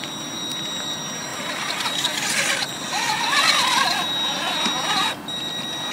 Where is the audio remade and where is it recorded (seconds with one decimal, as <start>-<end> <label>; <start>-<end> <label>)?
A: 0.0-5.9 recorded